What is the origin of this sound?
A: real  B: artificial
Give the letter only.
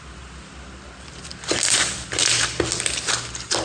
A